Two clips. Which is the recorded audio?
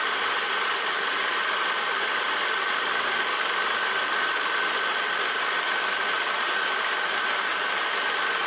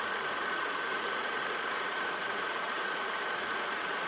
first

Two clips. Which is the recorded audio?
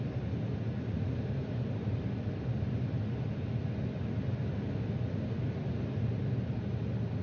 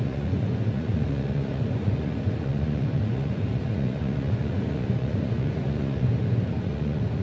first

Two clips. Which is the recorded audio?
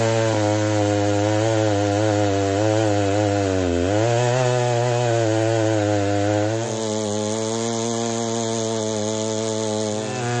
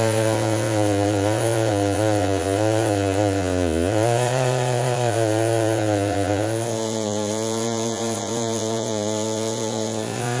first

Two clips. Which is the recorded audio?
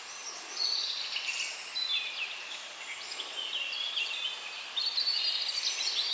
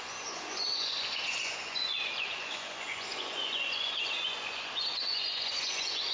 first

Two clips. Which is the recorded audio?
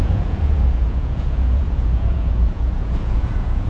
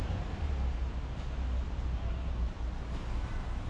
second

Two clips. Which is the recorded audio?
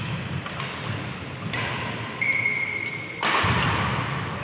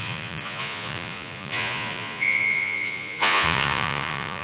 first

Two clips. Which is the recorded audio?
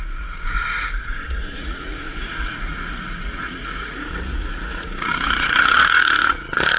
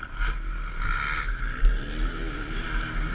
second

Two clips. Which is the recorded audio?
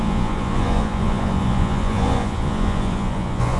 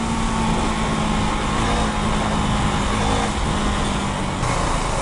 second